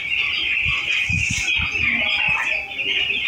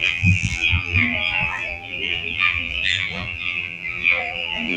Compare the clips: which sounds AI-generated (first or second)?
second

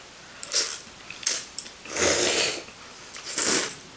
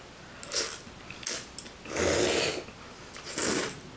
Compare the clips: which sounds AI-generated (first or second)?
first